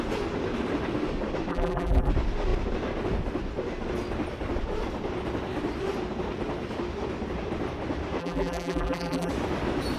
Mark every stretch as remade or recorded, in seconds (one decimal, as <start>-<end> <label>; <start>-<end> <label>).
0.0-1.5 recorded; 1.5-2.1 remade; 2.1-8.2 recorded; 8.2-9.3 remade; 9.3-10.0 recorded